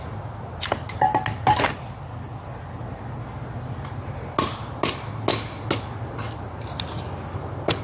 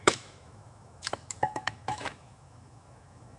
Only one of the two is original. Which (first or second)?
first